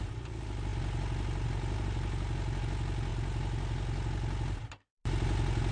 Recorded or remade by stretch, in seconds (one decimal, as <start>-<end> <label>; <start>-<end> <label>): 0.0-5.7 recorded